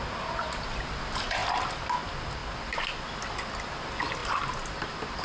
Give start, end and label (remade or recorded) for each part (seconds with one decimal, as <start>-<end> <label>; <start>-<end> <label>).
0.0-5.2 recorded